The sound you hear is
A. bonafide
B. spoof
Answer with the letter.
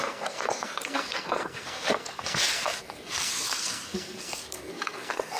B